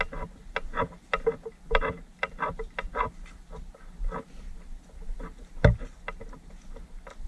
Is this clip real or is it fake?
real